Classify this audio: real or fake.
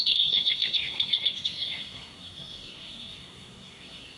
fake